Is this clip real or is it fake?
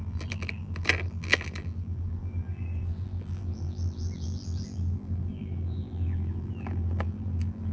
fake